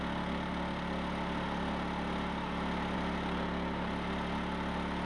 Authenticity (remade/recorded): recorded